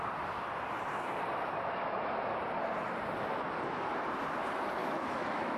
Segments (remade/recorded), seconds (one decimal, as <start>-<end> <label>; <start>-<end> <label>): 0.0-4.8 recorded; 4.8-5.6 remade